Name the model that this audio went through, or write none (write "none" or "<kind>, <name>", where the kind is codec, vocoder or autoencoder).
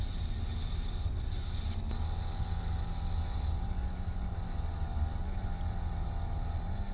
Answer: none